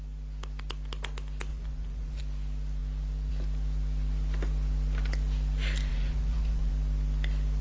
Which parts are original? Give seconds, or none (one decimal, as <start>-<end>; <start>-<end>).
0.0-1.5; 2.2-5.9; 6.7-7.6